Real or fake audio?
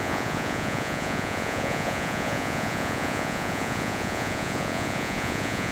fake